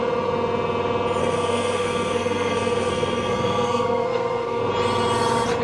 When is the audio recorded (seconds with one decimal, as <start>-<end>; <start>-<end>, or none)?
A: 0.0-1.2; 4.6-5.6